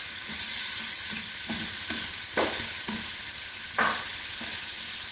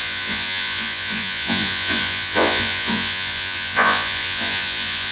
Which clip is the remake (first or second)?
second